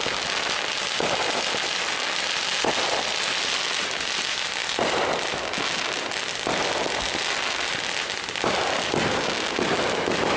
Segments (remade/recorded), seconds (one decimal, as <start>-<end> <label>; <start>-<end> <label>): 0.0-10.4 recorded